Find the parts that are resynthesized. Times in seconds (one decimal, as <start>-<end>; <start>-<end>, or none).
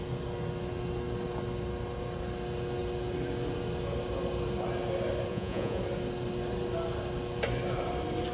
5.3-5.8